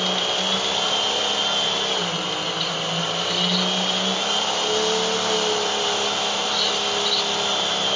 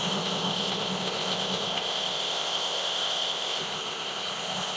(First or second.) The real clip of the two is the first